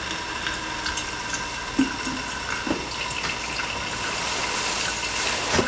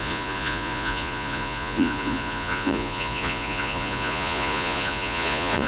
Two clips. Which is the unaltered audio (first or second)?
first